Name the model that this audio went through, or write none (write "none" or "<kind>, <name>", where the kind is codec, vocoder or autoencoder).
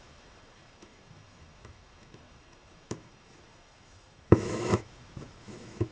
autoencoder, DAC-VAE